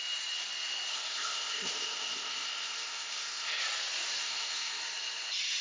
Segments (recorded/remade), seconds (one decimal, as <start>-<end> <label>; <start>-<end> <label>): 0.0-0.9 recorded; 0.9-3.6 remade; 3.6-4.2 recorded; 4.2-4.8 remade; 4.8-5.6 recorded